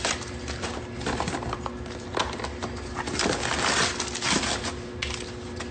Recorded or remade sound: recorded